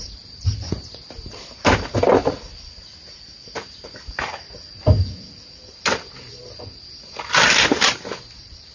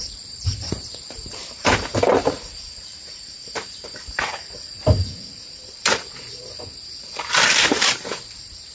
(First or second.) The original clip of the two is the first